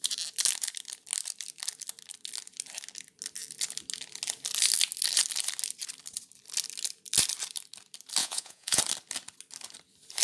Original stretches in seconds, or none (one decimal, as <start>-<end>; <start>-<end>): 0.0-8.2; 8.8-10.2